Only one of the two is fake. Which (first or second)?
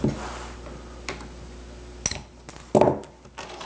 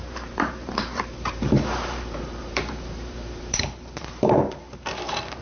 second